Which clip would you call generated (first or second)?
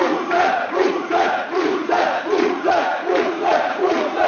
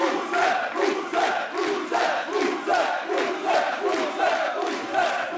first